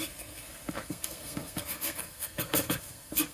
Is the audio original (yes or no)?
no